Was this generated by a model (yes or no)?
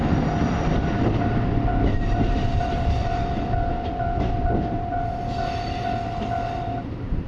yes